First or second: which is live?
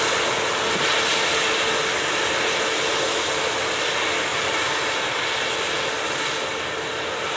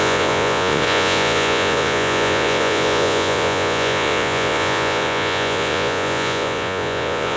first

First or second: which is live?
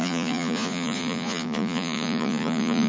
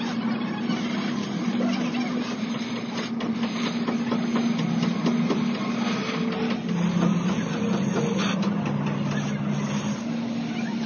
second